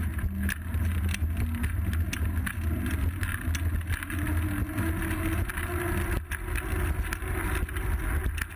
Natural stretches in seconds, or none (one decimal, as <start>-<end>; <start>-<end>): 0.0-8.6